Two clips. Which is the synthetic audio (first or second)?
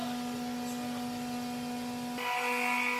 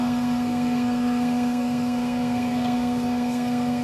second